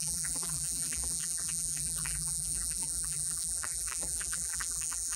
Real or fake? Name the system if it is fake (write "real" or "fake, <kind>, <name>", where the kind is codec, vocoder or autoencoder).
fake, vocoder, BigVGAN v2